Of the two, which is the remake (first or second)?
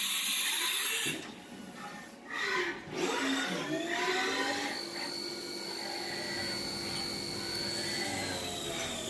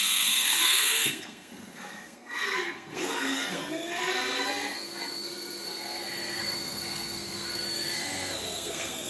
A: second